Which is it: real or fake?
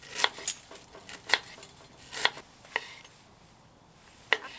real